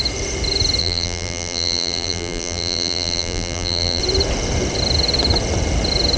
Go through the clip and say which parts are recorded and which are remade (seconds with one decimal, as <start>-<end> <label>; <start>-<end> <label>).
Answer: 0.0-0.8 recorded; 0.8-4.0 remade; 4.0-6.2 recorded